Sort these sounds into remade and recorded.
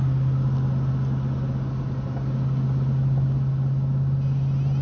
recorded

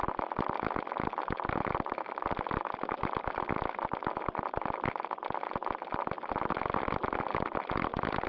recorded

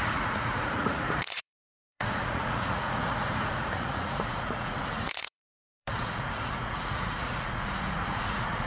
remade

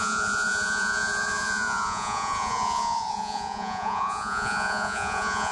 remade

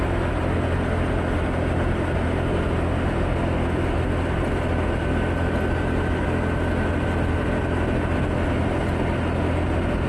recorded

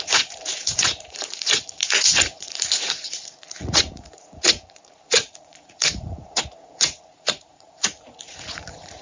remade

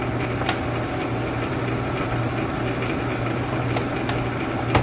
recorded